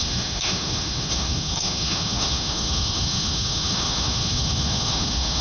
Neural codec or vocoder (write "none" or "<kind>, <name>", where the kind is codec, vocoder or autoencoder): autoencoder, DAC-VAE